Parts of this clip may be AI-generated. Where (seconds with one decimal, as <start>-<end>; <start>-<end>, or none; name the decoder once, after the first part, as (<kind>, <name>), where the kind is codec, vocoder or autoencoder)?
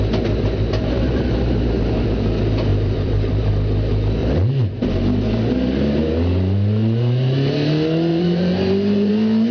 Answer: 2.7-3.5 (vocoder, BigVGAN v2); 4.2-5.0; 8.1-9.1